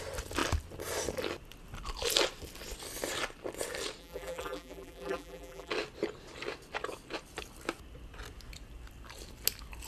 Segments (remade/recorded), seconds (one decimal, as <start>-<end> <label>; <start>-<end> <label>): 0.0-4.0 recorded; 4.0-5.7 remade; 5.7-9.9 recorded